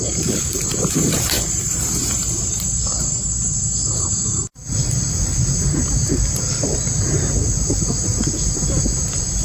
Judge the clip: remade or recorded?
remade